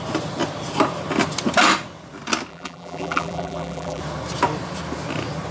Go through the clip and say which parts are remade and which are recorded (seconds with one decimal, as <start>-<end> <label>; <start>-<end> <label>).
0.0-2.5 recorded; 2.5-4.0 remade; 4.0-5.5 recorded